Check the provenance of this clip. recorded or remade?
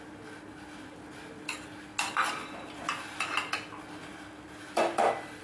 recorded